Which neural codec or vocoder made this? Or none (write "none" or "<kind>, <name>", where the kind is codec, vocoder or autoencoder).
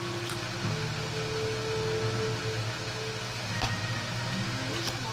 none